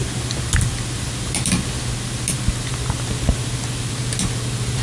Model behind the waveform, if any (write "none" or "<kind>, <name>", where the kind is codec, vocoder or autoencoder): none